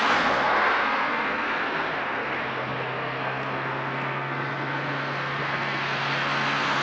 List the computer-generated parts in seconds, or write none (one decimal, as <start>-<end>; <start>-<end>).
0.0-6.8